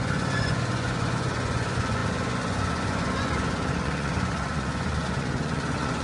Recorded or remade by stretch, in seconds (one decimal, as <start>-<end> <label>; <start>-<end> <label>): 0.0-6.0 remade